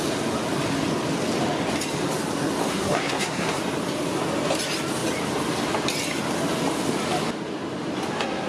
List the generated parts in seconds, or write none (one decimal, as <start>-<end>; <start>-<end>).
2.6-3.6